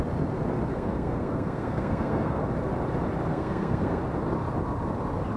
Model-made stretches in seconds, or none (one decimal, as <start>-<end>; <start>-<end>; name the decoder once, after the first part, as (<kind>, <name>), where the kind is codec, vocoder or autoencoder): 0.7-2.4 (codec, SNAC); 3.3-4.0